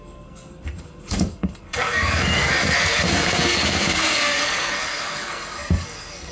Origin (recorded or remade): remade